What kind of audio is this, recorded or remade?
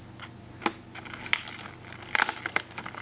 recorded